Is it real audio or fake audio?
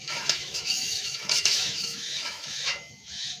fake